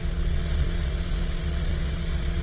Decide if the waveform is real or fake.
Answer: fake